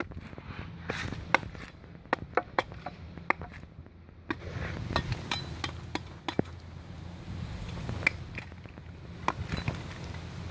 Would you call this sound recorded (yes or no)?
yes